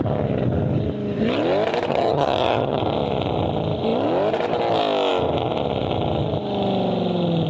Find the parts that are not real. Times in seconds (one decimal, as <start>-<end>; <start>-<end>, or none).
1.9-2.8